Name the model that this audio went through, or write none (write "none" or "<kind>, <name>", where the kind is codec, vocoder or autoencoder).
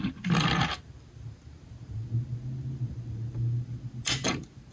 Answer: none